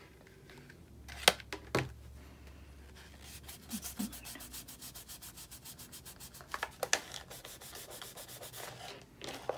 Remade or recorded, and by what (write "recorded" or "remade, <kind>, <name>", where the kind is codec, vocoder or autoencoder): recorded